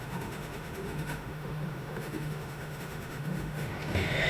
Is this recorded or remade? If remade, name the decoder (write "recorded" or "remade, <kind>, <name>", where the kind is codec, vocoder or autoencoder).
remade, autoencoder, DAC-VAE